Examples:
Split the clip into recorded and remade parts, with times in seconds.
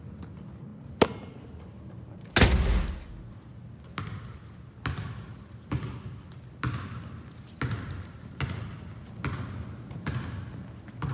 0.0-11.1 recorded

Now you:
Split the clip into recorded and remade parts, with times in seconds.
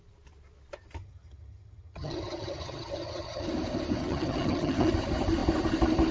0.0-1.0 recorded; 1.0-3.4 remade; 3.4-4.0 recorded; 4.0-4.9 remade; 4.9-6.1 recorded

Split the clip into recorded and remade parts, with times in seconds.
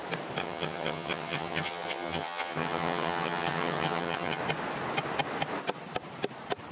0.0-0.4 recorded; 0.4-4.4 remade; 4.4-6.7 recorded